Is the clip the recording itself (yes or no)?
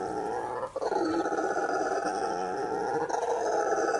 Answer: yes